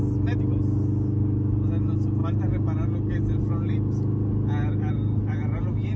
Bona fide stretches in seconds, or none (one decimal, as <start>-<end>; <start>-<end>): 0.0-6.0